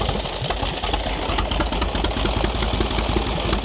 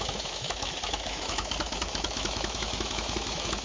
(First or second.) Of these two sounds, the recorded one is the first